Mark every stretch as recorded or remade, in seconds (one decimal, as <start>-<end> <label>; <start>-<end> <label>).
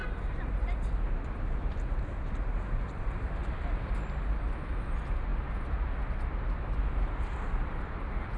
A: 0.0-3.9 remade; 3.9-8.4 recorded